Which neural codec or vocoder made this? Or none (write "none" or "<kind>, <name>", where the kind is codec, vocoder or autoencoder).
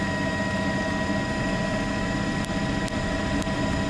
none